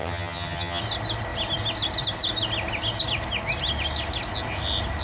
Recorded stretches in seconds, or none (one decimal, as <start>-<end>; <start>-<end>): 0.8-5.0